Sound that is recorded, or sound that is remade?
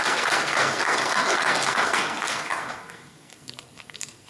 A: remade